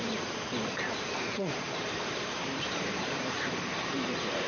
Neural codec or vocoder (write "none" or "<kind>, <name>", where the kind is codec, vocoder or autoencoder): vocoder, BigVGAN v2